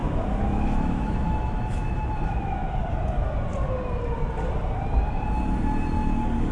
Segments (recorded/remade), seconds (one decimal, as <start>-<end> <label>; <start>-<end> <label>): 0.0-2.7 remade; 2.7-6.5 recorded